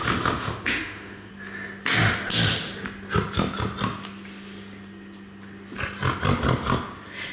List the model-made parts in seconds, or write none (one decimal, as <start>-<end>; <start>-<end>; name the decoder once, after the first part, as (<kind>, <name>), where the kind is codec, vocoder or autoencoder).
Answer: 0.0-1.3 (autoencoder, DAC-VAE)